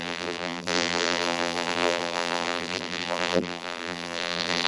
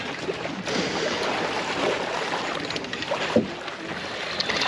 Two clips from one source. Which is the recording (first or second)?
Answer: second